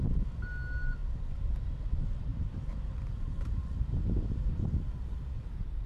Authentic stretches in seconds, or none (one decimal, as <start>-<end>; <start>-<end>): 0.0-1.0; 1.6-2.3